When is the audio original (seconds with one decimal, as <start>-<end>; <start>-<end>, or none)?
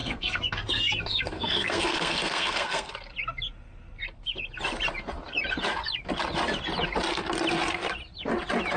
2.9-8.8